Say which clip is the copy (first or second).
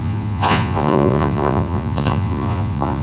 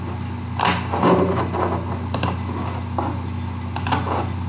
first